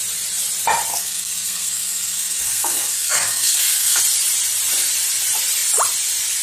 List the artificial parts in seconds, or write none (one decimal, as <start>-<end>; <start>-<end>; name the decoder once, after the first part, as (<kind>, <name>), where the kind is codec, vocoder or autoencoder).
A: 0.9-4.0 (codec, SNAC)